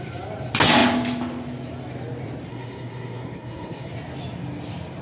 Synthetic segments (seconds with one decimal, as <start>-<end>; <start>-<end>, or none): 2.5-3.9